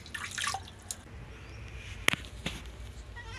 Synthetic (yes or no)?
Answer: no